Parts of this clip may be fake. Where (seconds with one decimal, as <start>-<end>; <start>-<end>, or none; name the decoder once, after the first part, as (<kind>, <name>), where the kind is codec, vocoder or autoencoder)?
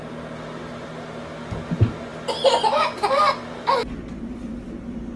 none